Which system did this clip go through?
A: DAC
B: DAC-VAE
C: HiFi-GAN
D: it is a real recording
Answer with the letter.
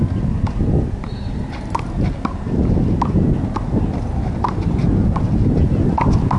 D